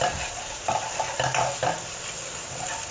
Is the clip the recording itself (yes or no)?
yes